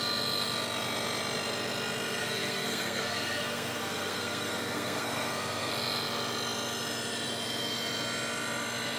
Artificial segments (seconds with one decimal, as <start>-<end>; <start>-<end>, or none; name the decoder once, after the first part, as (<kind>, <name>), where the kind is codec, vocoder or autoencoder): 2.2-5.7 (codec, SNAC)